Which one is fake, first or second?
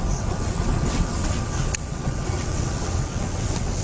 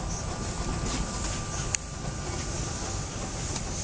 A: first